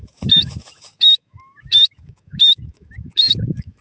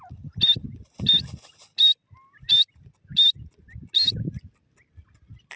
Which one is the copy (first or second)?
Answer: first